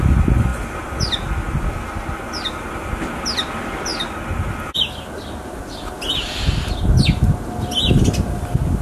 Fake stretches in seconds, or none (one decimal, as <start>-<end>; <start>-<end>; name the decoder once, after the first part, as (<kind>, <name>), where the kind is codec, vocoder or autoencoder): none